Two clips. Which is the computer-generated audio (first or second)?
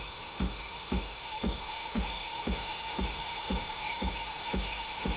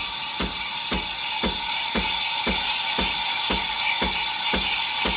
first